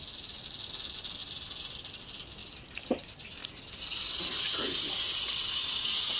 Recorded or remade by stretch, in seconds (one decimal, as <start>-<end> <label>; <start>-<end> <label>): 0.0-1.2 recorded; 1.2-1.8 remade; 1.8-2.4 recorded; 2.4-3.7 remade; 3.7-4.5 recorded; 4.5-5.2 remade; 5.2-6.2 recorded